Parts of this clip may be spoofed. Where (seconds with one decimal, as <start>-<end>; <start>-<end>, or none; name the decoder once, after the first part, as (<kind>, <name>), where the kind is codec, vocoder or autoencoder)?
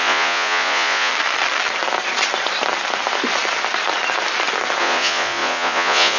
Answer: 0.0-1.1 (vocoder, Vocos); 4.8-6.2